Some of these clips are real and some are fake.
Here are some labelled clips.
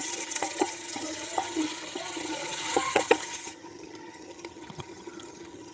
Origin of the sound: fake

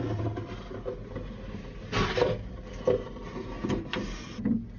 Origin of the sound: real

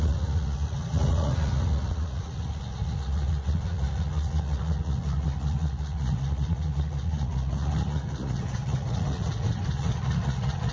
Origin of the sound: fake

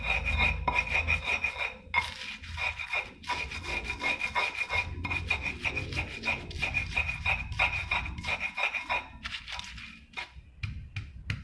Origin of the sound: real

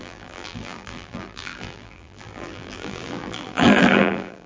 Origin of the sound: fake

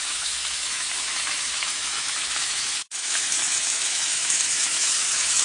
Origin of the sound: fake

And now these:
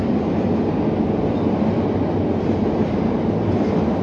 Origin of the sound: real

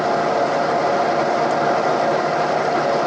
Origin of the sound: real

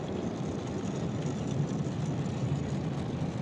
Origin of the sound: real